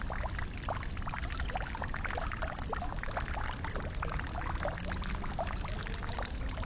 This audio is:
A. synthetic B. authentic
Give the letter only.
B